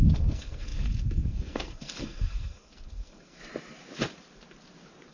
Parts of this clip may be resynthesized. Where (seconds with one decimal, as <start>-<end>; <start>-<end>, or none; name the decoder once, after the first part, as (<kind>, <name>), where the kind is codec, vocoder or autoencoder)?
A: 0.0-3.4 (codec, SNAC)